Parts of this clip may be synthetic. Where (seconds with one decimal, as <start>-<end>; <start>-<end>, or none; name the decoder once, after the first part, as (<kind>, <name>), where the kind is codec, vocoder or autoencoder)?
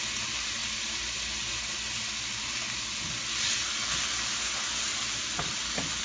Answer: none